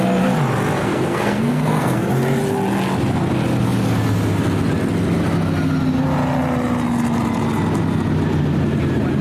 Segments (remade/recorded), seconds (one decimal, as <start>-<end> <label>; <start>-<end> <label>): 0.0-0.8 recorded; 0.8-2.1 remade; 2.1-9.2 recorded